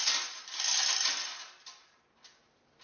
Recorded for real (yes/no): yes